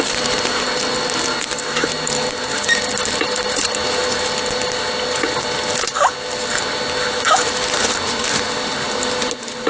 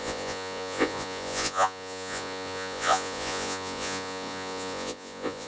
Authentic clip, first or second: first